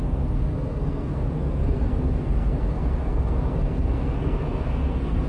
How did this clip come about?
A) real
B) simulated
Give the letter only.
B